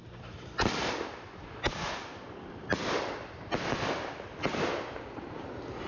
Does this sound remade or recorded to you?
recorded